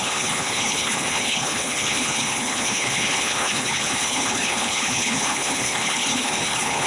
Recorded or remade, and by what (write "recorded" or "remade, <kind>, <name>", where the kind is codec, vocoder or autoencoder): remade, codec, HILCodec